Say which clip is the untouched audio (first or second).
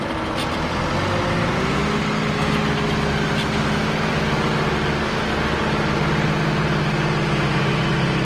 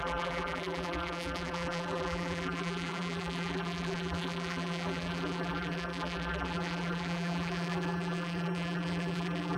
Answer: first